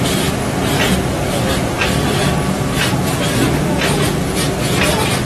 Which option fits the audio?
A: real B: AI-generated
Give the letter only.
A